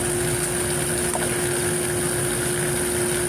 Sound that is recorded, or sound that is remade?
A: recorded